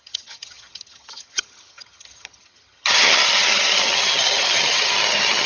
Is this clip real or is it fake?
fake